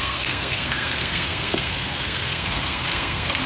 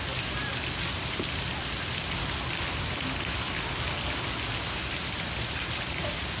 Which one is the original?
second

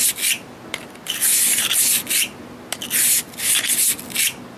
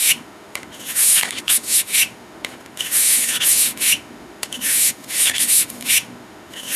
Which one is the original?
first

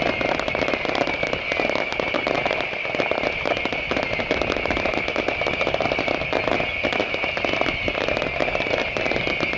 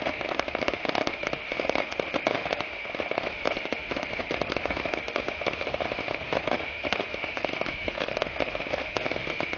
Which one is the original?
first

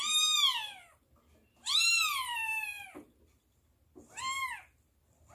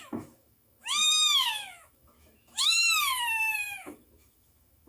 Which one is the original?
first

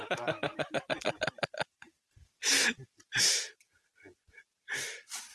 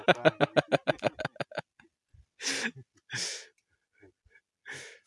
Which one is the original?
second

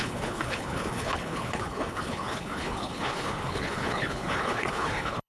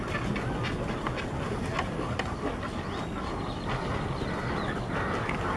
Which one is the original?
second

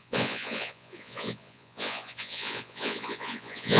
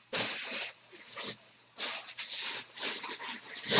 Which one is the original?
second